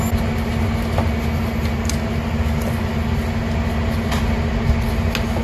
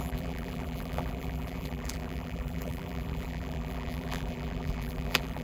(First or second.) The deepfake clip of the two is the second